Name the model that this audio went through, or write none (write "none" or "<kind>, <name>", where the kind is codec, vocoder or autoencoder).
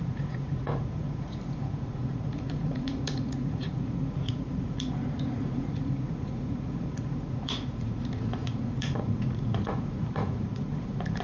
vocoder, Vocos